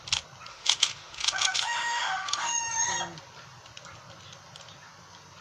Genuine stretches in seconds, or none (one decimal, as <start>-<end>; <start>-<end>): 0.0-0.5; 2.6-5.4